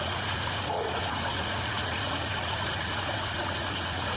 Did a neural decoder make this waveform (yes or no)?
yes